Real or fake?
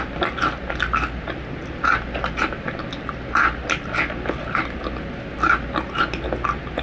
real